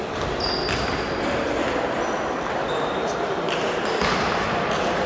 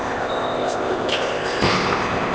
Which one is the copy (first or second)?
second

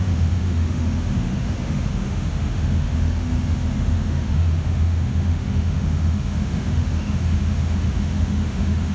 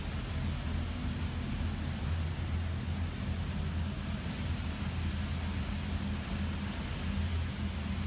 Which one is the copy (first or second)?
first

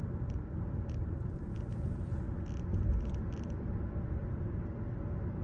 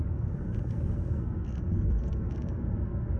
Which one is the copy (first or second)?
second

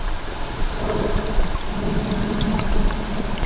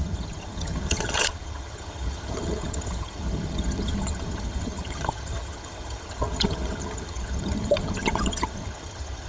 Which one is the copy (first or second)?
second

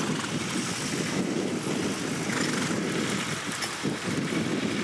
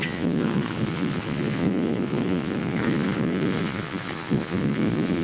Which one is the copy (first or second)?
second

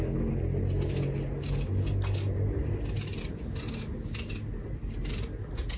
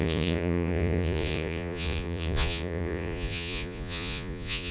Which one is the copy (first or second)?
second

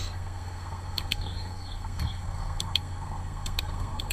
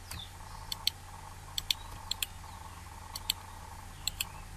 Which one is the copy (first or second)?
first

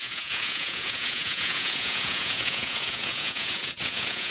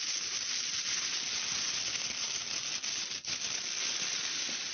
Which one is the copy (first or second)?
first